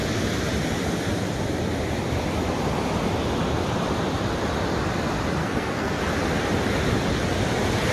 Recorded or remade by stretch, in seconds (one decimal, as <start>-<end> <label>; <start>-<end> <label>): 0.0-5.4 recorded; 5.4-6.0 remade; 6.0-7.9 recorded